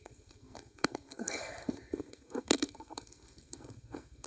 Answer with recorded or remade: remade